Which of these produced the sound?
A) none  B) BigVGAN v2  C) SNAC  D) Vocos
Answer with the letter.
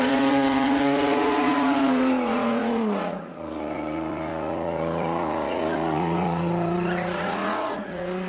D